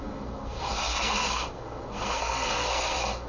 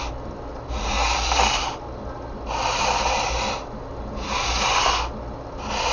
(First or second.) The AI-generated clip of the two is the first